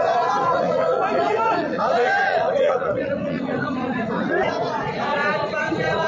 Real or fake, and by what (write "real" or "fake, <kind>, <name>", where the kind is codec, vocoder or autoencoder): fake, vocoder, Vocos